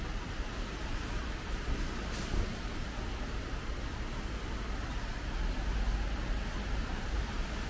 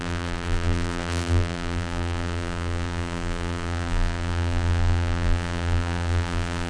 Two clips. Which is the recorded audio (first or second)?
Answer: first